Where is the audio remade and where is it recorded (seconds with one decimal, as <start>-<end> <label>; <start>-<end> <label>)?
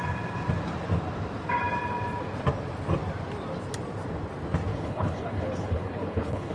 0.0-4.7 recorded; 4.7-6.5 remade